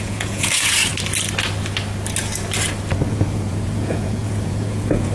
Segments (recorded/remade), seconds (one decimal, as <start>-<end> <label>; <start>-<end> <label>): 0.0-0.9 remade; 0.9-3.1 recorded; 3.1-5.1 remade